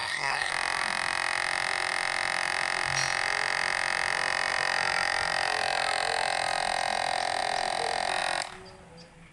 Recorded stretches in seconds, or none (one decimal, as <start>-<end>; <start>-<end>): 0.5-9.3